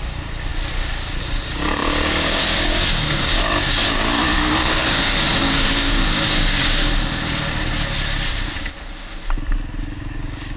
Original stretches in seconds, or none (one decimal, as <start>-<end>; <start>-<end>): 0.5-1.2; 6.8-9.8